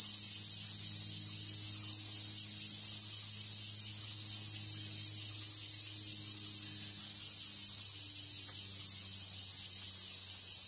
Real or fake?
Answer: real